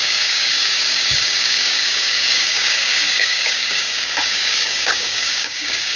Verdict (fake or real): fake